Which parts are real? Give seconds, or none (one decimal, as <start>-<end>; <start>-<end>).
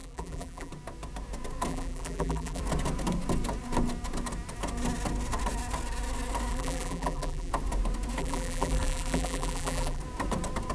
0.7-1.7; 2.6-6.5; 7.5-8.2; 10.0-10.7